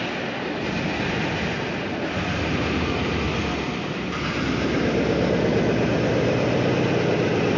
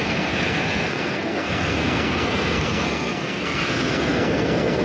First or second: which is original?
first